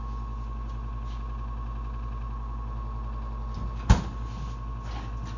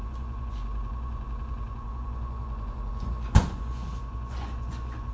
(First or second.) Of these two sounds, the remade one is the second